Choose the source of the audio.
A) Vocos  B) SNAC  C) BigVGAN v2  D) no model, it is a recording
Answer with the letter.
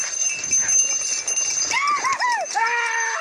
D